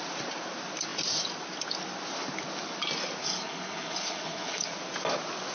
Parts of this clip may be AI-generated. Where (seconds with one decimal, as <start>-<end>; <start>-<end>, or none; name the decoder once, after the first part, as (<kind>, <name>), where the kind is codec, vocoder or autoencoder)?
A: 3.2-4.7 (codec, HILCodec)